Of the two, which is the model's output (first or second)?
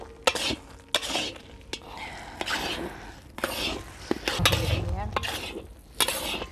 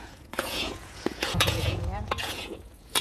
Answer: second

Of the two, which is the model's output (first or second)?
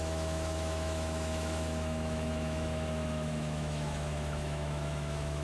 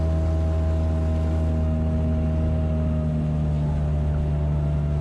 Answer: first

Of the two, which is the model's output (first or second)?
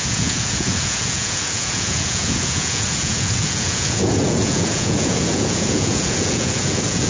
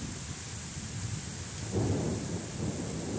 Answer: first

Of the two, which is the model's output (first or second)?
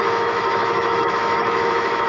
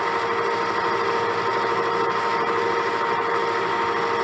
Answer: first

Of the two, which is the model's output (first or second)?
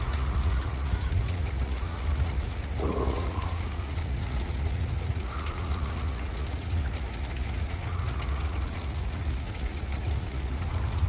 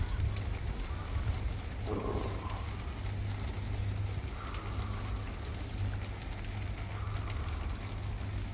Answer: first